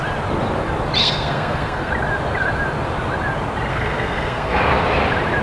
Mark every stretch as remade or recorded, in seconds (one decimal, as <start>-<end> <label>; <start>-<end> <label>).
0.0-1.0 recorded; 1.0-1.9 remade; 1.9-3.7 recorded; 3.7-4.6 remade; 4.6-5.4 recorded